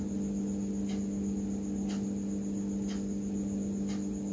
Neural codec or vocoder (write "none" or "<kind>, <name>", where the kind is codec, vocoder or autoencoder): none